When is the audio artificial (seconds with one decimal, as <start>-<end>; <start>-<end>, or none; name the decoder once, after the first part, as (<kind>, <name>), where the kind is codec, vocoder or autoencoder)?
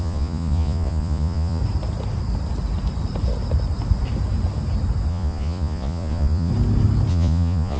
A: 0.0-1.6 (vocoder, Vocos); 5.1-6.5; 7.1-7.8